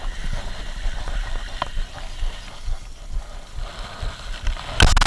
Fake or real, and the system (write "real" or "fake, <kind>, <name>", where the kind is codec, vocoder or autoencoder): real